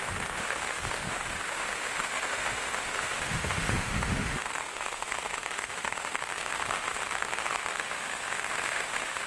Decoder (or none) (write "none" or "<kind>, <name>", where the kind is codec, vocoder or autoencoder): autoencoder, DAC-VAE